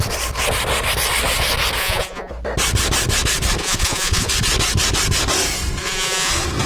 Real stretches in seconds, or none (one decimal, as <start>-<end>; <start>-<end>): 0.0-1.8; 2.3-3.6; 4.3-5.8; 6.3-6.7